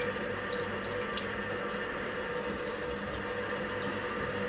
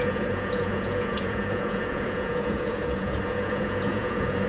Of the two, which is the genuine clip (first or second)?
first